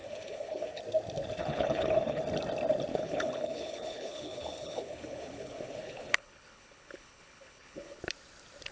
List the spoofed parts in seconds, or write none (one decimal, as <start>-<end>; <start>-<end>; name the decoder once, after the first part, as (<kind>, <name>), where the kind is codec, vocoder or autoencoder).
0.0-0.8 (codec, HILCodec); 1.4-2.2; 2.9-8.0